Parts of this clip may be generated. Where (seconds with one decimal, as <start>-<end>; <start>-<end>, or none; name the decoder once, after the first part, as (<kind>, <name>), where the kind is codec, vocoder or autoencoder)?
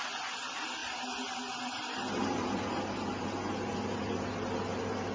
none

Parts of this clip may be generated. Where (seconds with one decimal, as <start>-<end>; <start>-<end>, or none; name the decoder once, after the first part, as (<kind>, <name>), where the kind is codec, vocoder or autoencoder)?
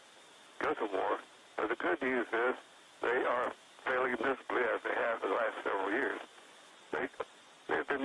6.3-7.5 (vocoder, Vocos)